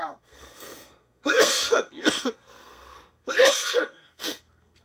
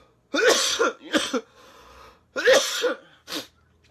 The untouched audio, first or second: second